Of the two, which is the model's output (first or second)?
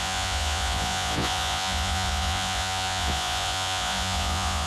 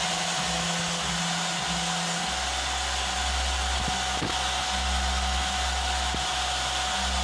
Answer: first